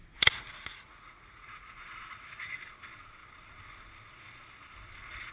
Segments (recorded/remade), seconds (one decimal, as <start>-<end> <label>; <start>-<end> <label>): 0.0-2.6 remade; 2.6-5.3 recorded